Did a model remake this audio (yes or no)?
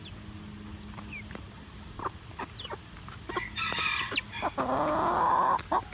no